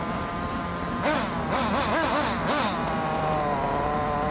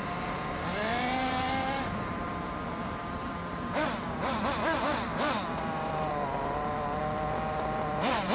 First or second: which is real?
first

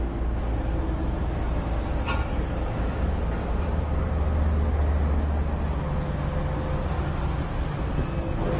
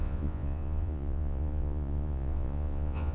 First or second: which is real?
first